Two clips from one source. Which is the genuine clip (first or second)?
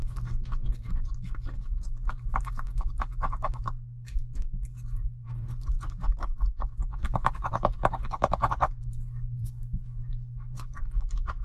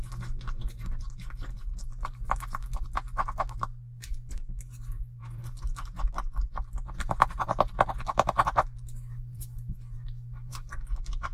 second